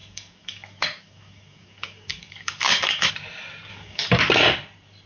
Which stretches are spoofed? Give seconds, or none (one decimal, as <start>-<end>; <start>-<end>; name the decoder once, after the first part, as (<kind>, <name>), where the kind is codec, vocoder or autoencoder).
0.0-3.1 (codec, DAC); 3.7-4.3